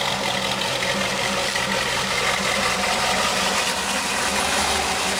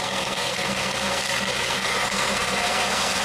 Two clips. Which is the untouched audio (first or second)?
first